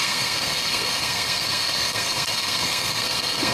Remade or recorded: remade